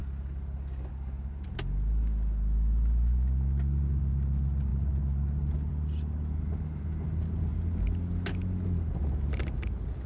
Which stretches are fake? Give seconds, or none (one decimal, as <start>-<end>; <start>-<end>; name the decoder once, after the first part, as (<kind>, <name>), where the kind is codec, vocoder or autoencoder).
none